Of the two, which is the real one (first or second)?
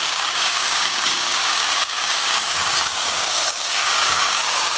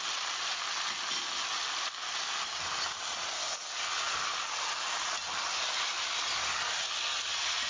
second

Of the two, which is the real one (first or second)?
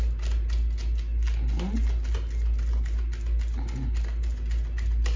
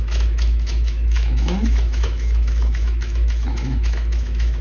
first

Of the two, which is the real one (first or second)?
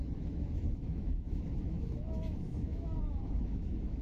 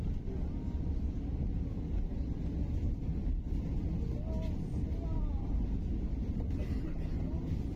second